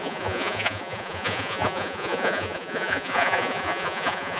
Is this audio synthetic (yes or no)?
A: yes